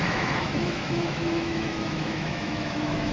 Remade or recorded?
remade